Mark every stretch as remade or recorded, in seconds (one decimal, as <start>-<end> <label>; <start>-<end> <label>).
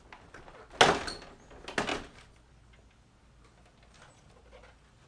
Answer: 0.0-5.1 recorded